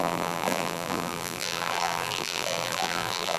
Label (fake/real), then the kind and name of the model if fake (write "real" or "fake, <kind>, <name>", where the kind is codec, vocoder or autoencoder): fake, vocoder, BigVGAN v2